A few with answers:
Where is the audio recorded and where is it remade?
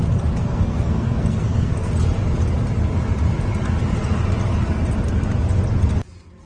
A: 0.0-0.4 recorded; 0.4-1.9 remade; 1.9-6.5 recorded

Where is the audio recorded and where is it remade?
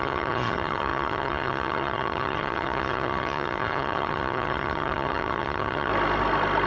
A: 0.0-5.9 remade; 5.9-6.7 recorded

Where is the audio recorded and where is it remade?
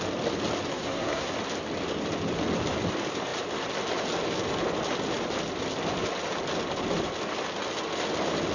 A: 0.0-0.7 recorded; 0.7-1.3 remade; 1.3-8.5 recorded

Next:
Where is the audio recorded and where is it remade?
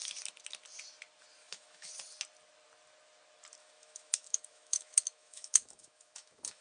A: 0.0-1.4 recorded; 1.4-1.9 remade; 1.9-3.6 recorded; 3.6-6.6 remade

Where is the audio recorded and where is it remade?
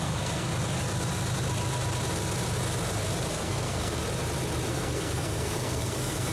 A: 0.0-0.5 remade; 0.5-3.3 recorded; 3.3-4.0 remade; 4.0-4.7 recorded; 4.7-6.3 remade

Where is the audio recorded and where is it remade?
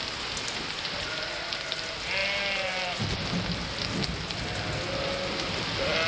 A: 0.0-6.1 recorded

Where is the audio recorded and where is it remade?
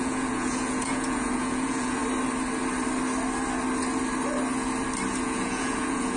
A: 0.0-2.0 remade; 2.0-5.2 recorded; 5.2-6.2 remade